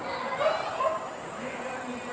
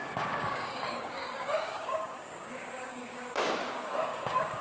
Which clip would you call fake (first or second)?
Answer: second